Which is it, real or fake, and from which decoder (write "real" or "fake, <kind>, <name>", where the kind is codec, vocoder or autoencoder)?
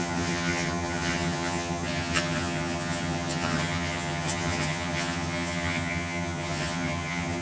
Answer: fake, vocoder, HiFi-GAN